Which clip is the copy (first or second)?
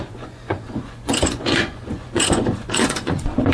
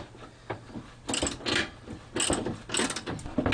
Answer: first